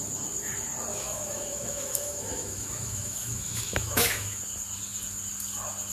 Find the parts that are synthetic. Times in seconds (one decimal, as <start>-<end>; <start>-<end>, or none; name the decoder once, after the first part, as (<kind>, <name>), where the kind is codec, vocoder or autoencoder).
0.9-4.4 (autoencoder, DAC-VAE)